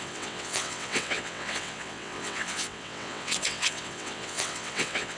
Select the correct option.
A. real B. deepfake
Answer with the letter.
B